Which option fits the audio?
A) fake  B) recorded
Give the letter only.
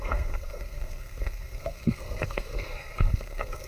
A